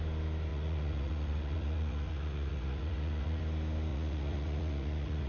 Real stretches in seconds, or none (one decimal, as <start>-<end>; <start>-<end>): 0.0-0.5; 3.4-3.9